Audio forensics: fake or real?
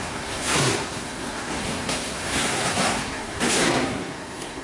fake